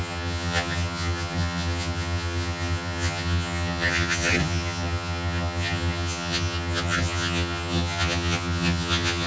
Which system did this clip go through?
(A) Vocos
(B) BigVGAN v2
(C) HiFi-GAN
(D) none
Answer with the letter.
C